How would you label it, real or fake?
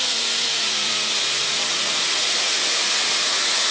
fake